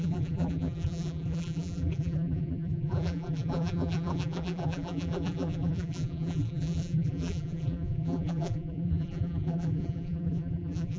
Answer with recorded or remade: remade